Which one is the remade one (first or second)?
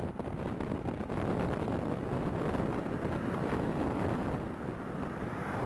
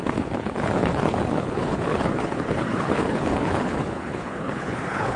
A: second